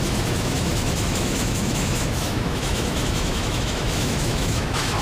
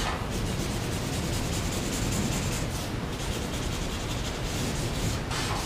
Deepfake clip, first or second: first